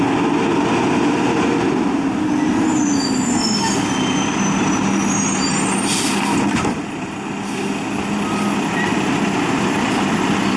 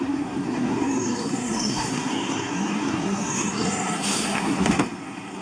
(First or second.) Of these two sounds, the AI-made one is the second